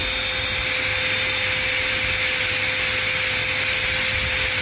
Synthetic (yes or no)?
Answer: no